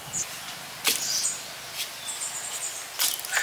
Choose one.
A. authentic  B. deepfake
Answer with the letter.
A